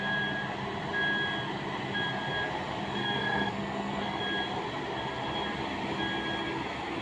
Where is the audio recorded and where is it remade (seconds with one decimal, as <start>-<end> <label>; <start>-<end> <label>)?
0.0-3.0 recorded; 3.0-4.2 remade; 4.2-7.0 recorded